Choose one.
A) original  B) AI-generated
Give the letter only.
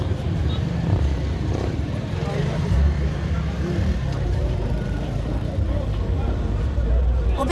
B